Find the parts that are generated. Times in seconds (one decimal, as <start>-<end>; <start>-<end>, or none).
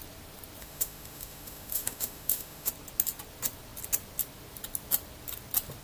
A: 0.6-2.7